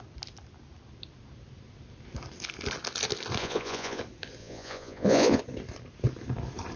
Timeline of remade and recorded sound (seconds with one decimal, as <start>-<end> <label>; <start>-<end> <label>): 0.0-3.4 recorded; 3.4-4.0 remade; 4.0-4.4 recorded; 4.4-5.4 remade; 5.4-6.8 recorded